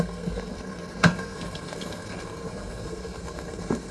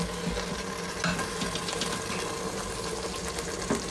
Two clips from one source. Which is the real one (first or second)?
second